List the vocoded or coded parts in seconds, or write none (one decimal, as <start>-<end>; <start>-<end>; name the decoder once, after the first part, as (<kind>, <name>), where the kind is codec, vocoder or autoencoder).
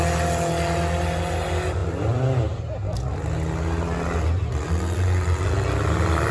none